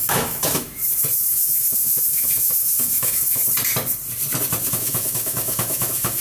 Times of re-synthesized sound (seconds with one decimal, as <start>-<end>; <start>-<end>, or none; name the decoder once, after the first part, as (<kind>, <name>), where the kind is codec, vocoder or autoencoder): 0.0-0.8 (autoencoder, DAC-VAE); 1.3-3.4; 4.7-6.2